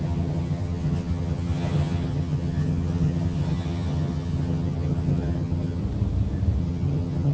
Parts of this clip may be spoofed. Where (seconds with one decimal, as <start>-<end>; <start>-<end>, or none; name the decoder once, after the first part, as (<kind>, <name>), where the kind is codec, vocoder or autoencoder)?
0.0-5.8 (vocoder, HiFi-GAN); 6.6-7.3